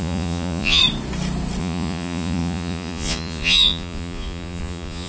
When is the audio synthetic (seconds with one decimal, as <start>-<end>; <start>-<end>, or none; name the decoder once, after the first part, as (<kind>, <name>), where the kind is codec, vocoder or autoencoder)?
0.0-0.8 (vocoder, Vocos); 1.6-5.1